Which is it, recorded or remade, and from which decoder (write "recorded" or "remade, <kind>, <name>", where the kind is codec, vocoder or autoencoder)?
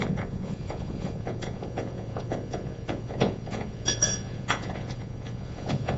remade, vocoder, Vocos